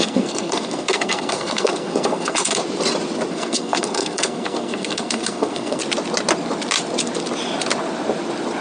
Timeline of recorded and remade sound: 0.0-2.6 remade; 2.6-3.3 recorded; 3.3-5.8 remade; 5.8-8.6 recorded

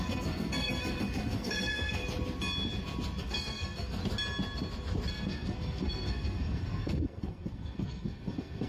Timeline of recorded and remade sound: 0.0-2.0 remade; 2.0-3.2 recorded; 3.2-4.0 remade; 4.0-5.1 recorded; 5.1-8.7 remade

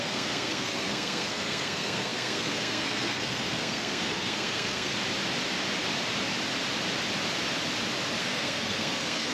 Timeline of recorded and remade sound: 0.0-4.9 remade; 4.9-8.2 recorded; 8.2-9.3 remade

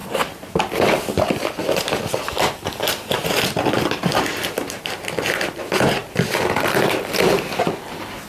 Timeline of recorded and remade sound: 0.0-1.6 recorded; 1.6-4.8 remade; 4.8-8.3 recorded

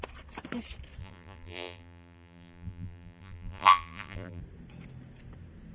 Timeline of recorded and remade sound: 0.0-1.0 recorded; 1.0-4.4 remade; 4.4-5.7 recorded

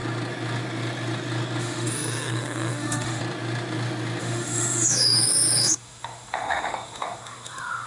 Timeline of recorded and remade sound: 0.0-1.6 recorded; 1.6-3.2 remade; 3.2-4.2 recorded; 4.2-7.9 remade

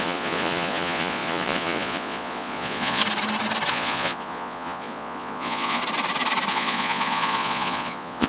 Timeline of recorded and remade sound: 0.0-3.0 remade; 3.0-3.7 recorded; 3.7-5.8 remade; 5.8-6.5 recorded; 6.5-8.3 remade